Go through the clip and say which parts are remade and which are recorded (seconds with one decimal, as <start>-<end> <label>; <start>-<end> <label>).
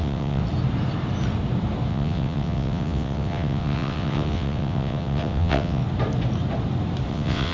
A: 0.0-0.4 remade; 0.4-1.9 recorded; 1.9-5.8 remade; 5.8-7.1 recorded; 7.1-7.5 remade